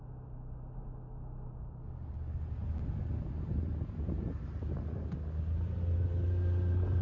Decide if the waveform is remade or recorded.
recorded